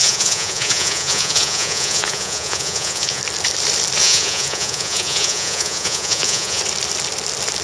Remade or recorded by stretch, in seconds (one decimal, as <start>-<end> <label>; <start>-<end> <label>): 0.0-3.2 remade; 3.2-4.0 recorded; 4.0-6.6 remade; 6.6-7.6 recorded